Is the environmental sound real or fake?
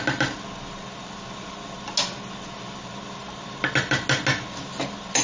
real